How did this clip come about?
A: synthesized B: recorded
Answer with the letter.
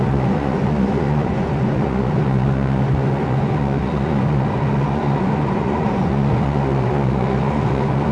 A